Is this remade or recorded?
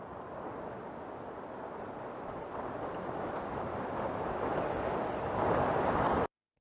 recorded